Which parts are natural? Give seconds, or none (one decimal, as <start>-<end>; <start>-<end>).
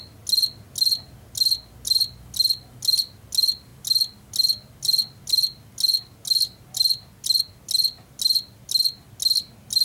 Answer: 0.0-9.8